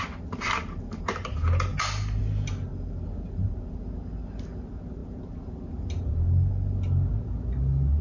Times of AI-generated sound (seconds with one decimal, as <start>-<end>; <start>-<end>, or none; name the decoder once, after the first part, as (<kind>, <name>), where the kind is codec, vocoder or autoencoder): none